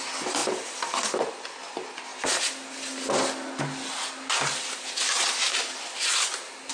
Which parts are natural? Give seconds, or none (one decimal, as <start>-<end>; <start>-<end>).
0.0-6.7